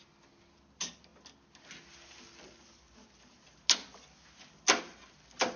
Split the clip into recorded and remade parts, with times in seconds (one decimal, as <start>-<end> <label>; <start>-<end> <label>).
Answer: 0.0-5.6 recorded